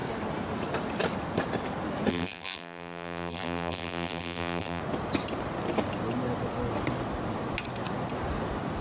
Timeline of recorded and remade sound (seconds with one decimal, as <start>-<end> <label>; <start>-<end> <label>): 0.0-2.1 recorded; 2.1-4.8 remade; 4.8-8.8 recorded